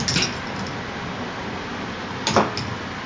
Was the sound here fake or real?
real